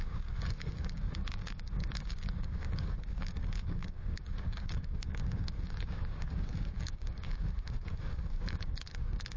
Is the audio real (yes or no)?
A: no